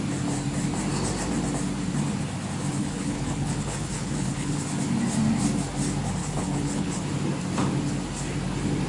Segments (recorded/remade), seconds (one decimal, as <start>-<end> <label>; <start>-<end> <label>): 0.0-2.8 recorded; 2.8-4.6 remade; 4.6-6.2 recorded; 6.2-7.0 remade; 7.0-8.9 recorded